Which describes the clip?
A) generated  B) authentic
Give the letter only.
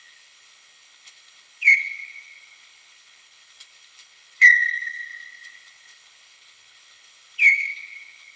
A